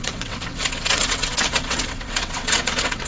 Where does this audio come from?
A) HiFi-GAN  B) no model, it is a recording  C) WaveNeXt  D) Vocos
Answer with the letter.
C